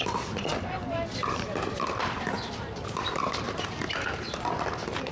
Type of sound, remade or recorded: recorded